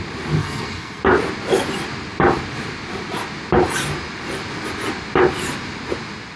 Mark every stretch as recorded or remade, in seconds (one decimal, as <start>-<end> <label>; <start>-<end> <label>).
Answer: 0.0-0.4 recorded; 0.4-1.0 remade; 1.0-6.4 recorded